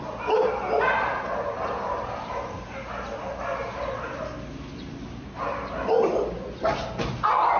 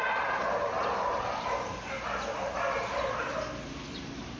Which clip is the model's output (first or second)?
second